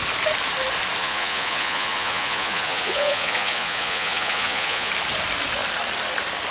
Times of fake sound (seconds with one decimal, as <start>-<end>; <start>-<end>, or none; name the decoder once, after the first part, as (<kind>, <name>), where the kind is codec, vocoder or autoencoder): 1.0-4.9 (vocoder, Vocos)